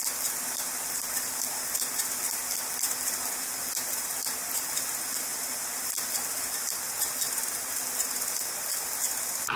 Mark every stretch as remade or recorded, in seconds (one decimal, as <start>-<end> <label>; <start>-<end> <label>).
0.0-9.6 recorded